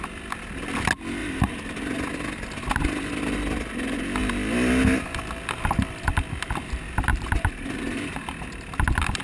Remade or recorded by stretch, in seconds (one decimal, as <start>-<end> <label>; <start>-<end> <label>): 0.0-1.2 recorded; 1.2-1.8 remade; 1.8-7.1 recorded; 7.1-7.8 remade; 7.8-9.2 recorded

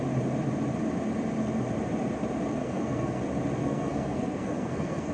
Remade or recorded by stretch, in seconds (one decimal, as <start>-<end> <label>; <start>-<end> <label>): 0.0-2.6 recorded; 2.6-3.2 remade; 3.2-3.6 recorded; 3.6-5.1 remade